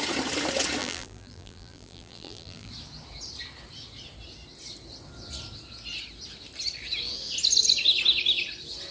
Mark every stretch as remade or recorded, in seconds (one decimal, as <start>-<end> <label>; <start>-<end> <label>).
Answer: 0.0-0.8 recorded; 0.8-2.7 remade; 2.7-8.9 recorded